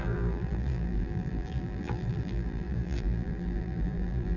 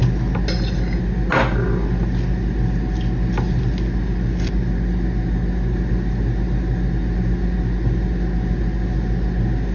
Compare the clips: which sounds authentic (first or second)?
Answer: second